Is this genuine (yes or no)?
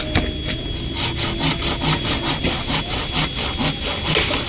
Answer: yes